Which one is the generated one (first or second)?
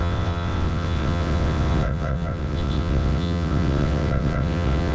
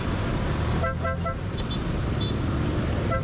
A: first